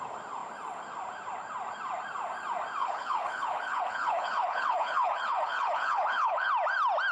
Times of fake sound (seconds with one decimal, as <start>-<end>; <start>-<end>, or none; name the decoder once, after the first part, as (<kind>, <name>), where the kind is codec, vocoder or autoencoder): 2.8-6.5 (codec, HILCodec)